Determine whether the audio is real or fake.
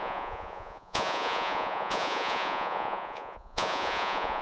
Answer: fake